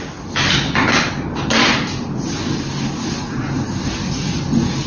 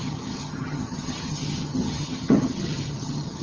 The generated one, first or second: second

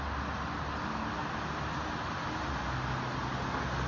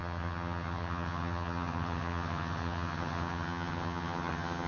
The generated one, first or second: second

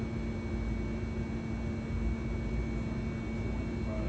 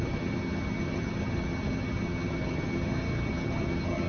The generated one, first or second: second